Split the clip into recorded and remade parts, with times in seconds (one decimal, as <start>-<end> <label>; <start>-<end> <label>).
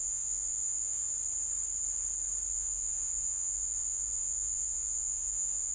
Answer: 0.0-1.1 remade; 1.1-2.5 recorded; 2.5-5.7 remade